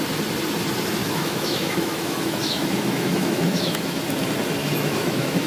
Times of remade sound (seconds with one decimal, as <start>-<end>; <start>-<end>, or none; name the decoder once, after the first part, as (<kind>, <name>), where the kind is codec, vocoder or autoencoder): 1.0-4.0 (autoencoder, DAC-VAE); 4.6-5.5